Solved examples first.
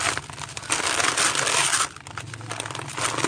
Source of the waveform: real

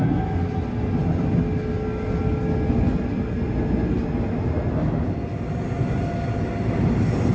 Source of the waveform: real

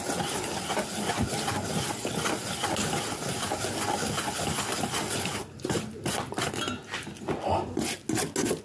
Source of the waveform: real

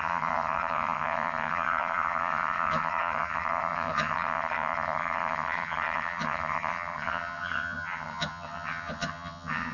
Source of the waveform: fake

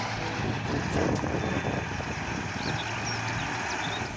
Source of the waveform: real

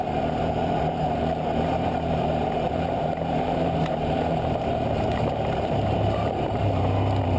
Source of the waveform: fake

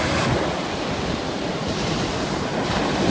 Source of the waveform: fake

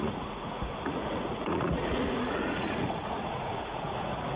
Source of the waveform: fake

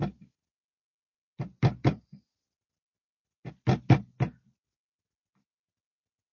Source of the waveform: real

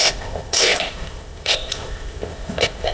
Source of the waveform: fake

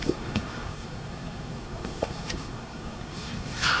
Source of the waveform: fake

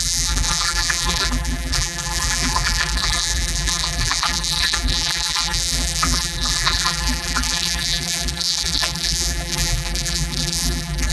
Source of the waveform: fake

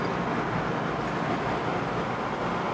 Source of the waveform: real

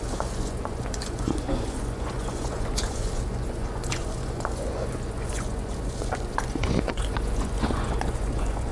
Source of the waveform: fake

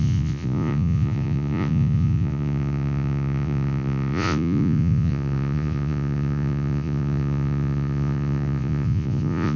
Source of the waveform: fake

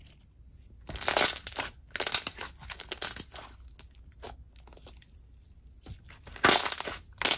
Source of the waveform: real